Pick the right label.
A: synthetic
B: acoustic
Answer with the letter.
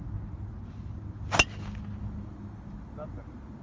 B